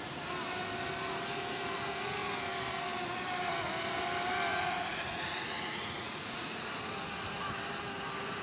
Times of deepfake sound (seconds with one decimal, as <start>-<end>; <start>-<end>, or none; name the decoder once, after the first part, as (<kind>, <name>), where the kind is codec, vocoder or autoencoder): 4.5-6.6 (vocoder, Vocos)

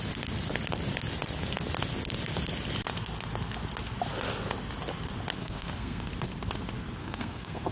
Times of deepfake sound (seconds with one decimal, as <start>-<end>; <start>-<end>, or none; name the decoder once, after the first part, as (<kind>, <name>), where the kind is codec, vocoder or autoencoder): 5.4-6.1 (codec, SNAC); 7.0-7.7

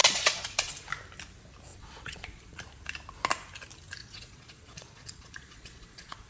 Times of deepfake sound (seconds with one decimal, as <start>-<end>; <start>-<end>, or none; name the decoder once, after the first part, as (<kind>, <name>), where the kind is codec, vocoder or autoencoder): 0.0-0.7 (vocoder, Vocos); 1.7-2.6; 4.0-6.3

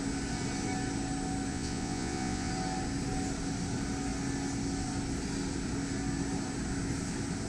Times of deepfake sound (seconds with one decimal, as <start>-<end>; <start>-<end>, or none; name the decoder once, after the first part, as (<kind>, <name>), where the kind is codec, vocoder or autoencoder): 1.5-2.5 (vocoder, Vocos)